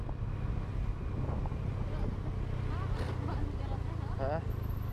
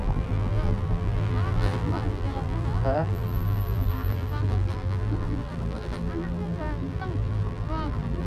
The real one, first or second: first